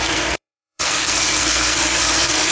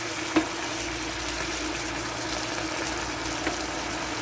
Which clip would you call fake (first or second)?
first